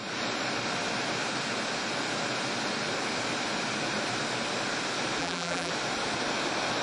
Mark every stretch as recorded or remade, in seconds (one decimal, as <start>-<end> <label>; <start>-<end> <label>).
0.0-5.2 recorded; 5.2-5.7 remade; 5.7-6.8 recorded